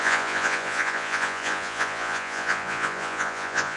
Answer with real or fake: fake